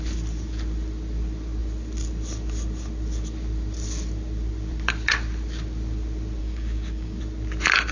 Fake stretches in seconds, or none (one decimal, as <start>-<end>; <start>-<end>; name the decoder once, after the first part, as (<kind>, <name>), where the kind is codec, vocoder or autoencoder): 6.4-7.2 (codec, DAC)